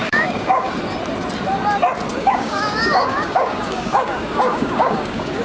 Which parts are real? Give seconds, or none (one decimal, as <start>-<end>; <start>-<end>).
0.7-2.1